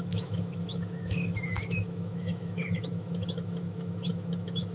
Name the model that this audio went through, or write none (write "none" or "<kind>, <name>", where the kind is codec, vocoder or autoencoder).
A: autoencoder, DAC-VAE